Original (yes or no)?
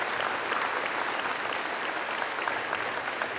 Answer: yes